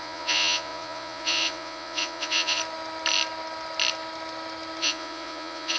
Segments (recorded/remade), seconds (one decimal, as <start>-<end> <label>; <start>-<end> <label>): 0.0-2.6 remade; 2.6-4.8 recorded; 4.8-5.8 remade